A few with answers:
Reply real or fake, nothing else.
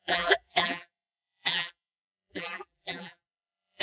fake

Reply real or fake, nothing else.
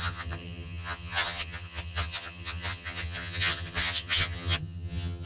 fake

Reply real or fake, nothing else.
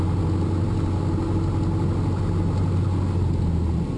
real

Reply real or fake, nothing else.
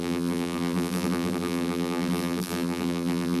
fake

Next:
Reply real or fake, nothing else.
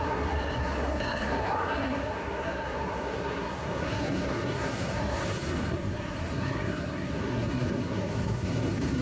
fake